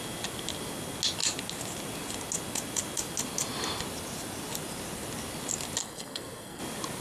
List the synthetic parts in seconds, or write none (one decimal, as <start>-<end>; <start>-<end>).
5.8-6.6